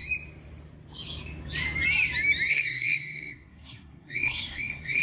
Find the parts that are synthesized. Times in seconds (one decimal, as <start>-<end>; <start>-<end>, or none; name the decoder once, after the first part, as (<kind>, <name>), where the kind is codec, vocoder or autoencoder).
2.5-5.0 (codec, SNAC)